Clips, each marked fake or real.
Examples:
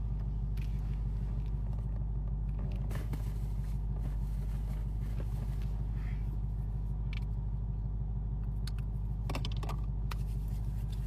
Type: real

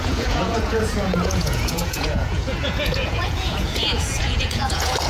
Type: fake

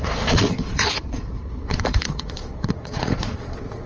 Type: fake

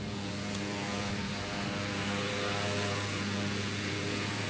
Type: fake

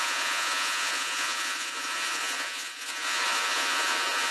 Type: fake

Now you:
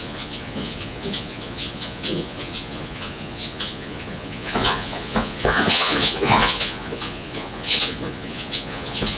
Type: fake